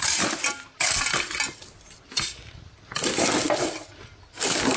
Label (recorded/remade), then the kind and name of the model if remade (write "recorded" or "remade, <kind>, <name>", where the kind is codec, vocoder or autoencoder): recorded